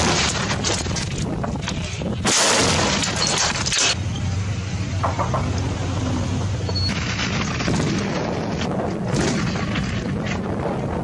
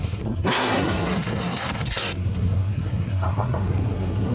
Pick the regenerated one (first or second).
second